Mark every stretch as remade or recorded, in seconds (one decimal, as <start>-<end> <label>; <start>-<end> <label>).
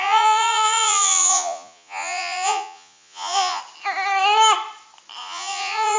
0.0-3.6 remade; 3.6-5.2 recorded; 5.2-6.0 remade